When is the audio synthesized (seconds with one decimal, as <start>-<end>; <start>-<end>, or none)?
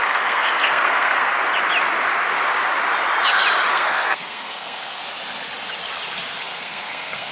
0.0-1.3; 3.7-5.0; 6.4-7.3